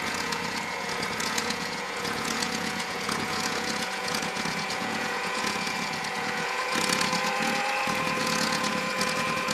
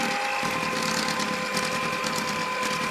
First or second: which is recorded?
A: second